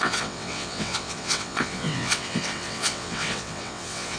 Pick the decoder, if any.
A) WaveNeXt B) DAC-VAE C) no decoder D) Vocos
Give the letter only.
A